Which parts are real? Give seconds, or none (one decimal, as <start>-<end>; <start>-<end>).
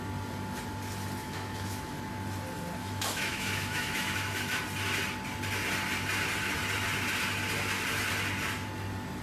0.0-1.2; 1.8-2.8; 4.6-9.2